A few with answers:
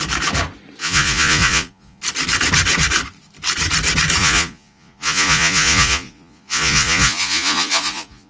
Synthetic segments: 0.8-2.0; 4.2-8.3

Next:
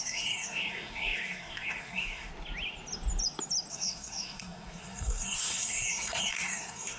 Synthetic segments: 0.0-2.3; 3.7-7.0

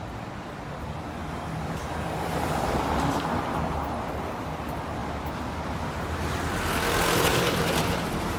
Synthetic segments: 1.2-2.4; 7.3-8.4

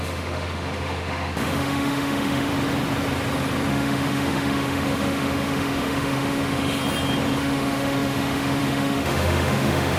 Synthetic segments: 0.0-2.5; 3.7-6.8; 7.4-10.0

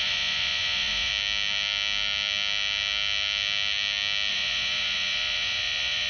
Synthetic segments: 0.0-1.1; 4.3-6.1

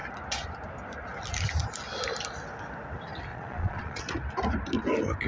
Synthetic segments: 3.3-4.0